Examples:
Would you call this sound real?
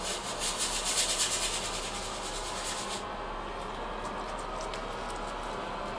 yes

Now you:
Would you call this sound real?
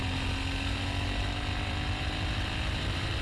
yes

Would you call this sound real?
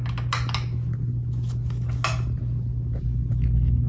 yes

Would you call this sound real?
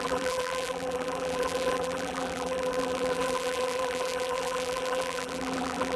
no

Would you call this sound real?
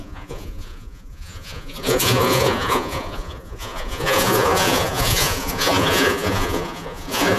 no